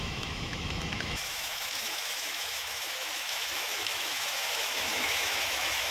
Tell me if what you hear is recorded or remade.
remade